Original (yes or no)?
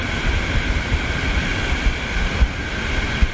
yes